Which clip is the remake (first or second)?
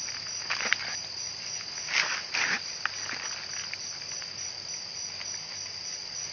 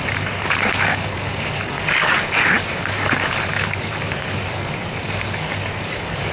second